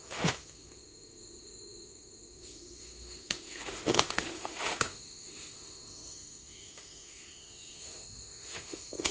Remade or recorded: remade